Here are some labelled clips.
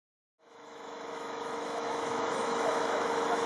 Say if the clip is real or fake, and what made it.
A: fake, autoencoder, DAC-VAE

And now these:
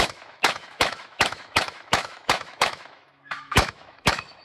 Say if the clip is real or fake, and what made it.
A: fake, autoencoder, DAC-VAE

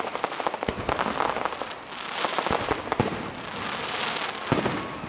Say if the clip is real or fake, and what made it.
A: real